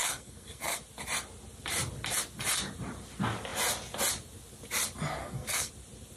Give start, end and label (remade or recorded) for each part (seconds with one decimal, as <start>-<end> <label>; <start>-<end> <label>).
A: 0.0-0.8 remade; 0.8-5.2 recorded; 5.2-5.7 remade; 5.7-6.2 recorded